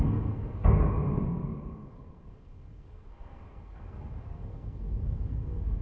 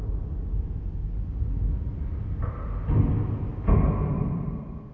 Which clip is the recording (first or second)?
second